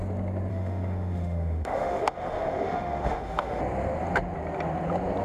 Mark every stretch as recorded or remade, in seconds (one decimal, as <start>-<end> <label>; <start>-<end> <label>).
0.0-0.5 recorded; 0.5-3.6 remade; 3.6-5.2 recorded